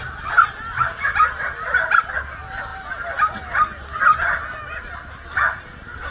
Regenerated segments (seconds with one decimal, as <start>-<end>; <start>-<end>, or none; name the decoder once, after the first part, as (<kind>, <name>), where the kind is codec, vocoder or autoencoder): none